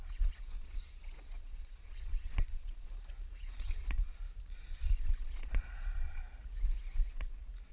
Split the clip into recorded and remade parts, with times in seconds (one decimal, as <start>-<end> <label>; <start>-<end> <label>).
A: 0.0-6.2 remade; 6.2-7.7 recorded